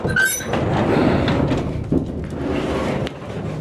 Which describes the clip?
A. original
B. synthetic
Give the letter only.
A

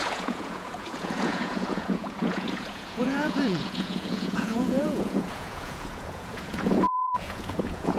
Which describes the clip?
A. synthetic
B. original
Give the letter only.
A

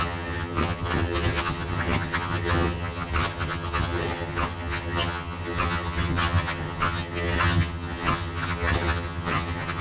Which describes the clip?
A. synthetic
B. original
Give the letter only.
A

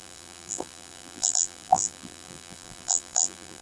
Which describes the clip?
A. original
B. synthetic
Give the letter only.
B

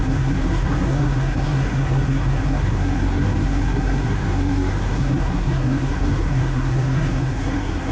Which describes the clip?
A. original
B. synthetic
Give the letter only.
B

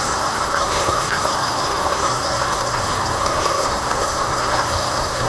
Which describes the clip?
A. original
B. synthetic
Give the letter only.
B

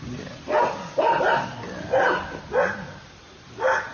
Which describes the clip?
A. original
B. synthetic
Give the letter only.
A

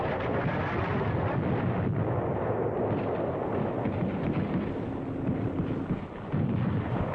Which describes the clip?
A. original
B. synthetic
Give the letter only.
A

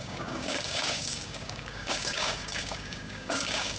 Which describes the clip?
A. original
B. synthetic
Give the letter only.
B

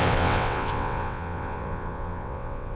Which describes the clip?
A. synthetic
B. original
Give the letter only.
A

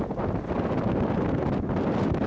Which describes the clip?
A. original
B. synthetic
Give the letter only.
A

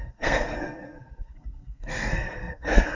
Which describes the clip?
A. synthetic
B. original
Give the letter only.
A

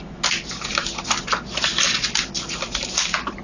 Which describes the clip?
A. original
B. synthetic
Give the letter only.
A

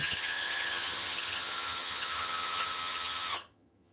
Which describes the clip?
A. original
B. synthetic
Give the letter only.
B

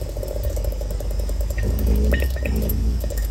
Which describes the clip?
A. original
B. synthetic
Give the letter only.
B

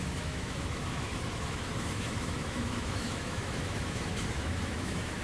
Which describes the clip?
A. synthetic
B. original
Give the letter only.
A